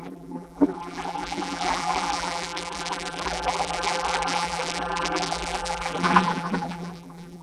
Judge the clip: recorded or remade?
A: remade